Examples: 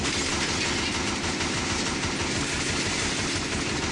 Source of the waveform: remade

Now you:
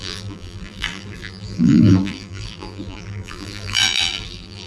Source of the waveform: remade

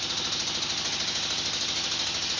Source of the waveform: recorded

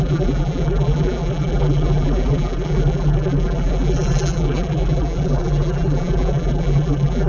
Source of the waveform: remade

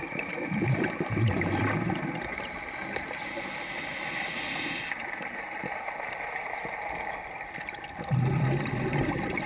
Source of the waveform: remade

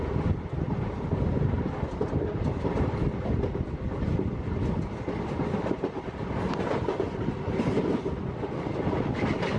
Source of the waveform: recorded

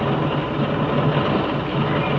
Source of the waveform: recorded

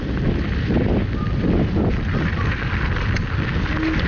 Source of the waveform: recorded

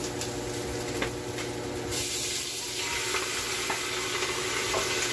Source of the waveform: recorded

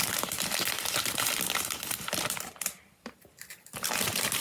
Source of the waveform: remade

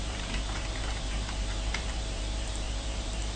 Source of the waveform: remade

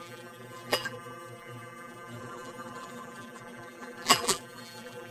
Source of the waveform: remade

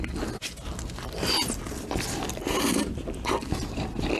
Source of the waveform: recorded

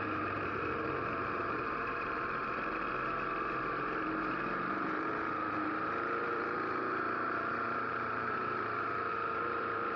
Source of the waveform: remade